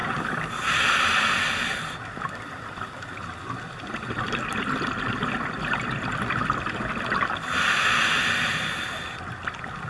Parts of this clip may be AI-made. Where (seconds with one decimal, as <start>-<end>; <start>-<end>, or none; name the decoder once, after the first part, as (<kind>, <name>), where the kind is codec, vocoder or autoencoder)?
none